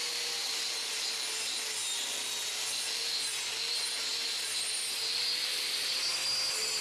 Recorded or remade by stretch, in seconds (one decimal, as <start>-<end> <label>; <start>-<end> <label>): 0.0-0.6 remade; 0.6-4.1 recorded; 4.1-6.0 remade; 6.0-6.8 recorded